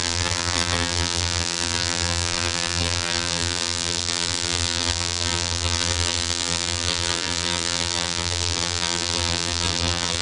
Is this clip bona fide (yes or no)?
no